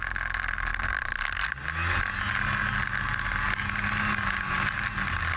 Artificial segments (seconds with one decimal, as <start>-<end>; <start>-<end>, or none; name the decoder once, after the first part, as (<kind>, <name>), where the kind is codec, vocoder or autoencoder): none